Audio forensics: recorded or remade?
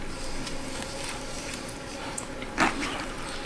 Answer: recorded